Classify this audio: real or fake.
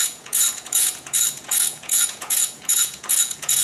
fake